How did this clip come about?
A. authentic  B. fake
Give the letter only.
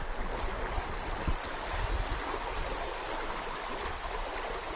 A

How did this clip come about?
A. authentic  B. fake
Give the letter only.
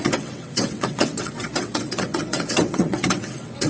B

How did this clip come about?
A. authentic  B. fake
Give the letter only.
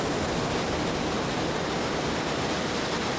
A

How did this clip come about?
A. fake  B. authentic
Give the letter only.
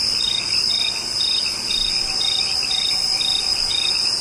B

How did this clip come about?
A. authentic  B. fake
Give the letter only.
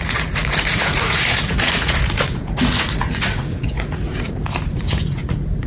B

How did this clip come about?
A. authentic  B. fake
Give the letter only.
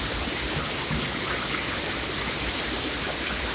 B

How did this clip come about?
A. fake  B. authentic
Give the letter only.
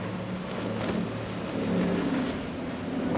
B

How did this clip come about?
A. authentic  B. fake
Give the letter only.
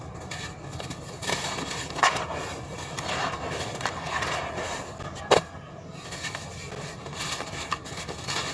A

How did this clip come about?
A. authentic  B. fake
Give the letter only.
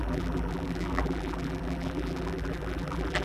B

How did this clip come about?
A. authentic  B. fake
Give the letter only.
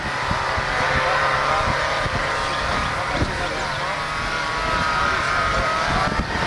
A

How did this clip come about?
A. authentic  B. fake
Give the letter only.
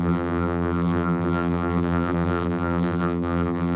B